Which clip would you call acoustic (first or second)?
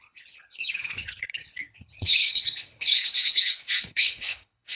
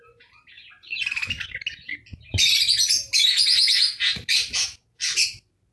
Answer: second